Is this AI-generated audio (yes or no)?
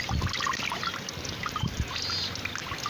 no